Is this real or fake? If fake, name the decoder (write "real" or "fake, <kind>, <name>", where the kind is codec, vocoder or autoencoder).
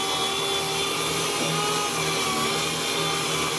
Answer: real